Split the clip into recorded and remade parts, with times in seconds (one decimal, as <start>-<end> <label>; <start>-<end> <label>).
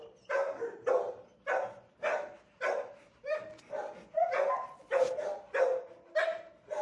0.0-6.8 recorded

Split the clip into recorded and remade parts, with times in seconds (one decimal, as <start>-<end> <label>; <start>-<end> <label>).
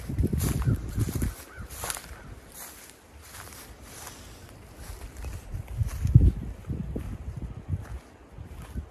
0.0-8.9 recorded